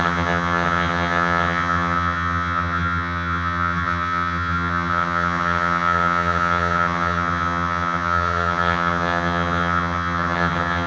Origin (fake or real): fake